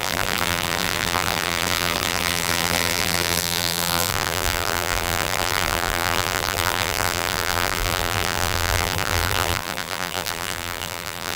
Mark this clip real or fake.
fake